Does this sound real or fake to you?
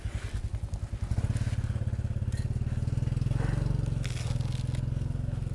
real